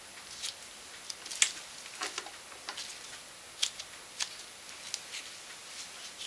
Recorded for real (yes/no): yes